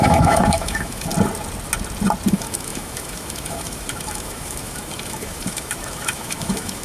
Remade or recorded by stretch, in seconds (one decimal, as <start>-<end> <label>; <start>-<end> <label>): 0.0-1.1 remade; 1.1-2.3 recorded; 2.3-6.8 remade